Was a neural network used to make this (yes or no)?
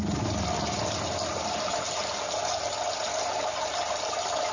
no